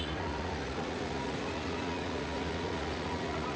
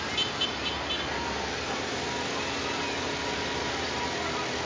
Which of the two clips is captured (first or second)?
second